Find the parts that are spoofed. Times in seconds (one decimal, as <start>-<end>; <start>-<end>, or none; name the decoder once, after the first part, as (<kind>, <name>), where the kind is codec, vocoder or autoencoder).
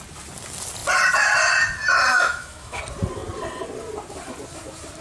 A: 2.1-2.8 (autoencoder, DAC-VAE)